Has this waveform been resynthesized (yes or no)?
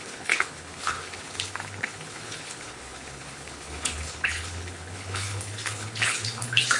yes